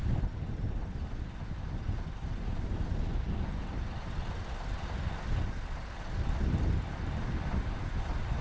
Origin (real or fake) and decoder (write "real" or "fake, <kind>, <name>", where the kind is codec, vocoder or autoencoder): real